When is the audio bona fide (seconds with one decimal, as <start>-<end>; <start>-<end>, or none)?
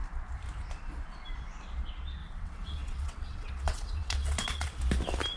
0.0-2.2; 4.8-5.4